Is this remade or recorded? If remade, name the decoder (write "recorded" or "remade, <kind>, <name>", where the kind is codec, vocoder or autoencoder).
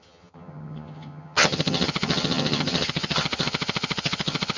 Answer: remade, vocoder, HiFi-GAN